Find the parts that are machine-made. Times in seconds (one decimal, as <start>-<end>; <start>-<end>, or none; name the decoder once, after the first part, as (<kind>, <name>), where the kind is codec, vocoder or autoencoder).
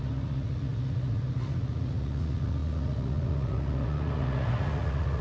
0.0-5.2 (vocoder, Vocos)